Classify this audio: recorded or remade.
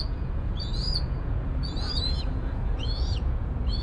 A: remade